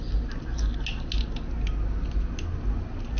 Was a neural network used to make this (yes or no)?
no